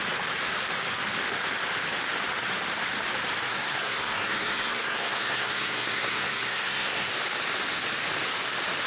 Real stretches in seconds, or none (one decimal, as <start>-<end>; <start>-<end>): 0.0-3.5; 7.1-8.9